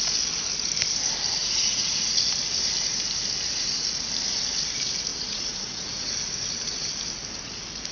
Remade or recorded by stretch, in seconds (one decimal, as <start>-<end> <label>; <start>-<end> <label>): 0.0-1.4 recorded; 1.4-2.2 remade; 2.2-5.1 recorded; 5.1-6.1 remade; 6.1-7.9 recorded